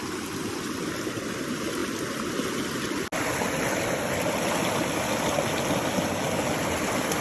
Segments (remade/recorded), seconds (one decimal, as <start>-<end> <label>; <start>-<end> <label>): 0.0-7.2 recorded